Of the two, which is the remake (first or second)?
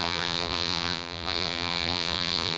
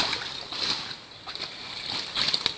first